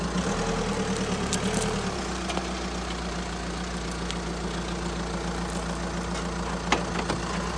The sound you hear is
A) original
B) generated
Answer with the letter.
A